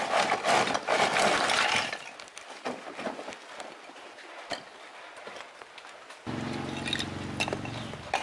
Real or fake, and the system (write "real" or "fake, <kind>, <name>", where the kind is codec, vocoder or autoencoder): real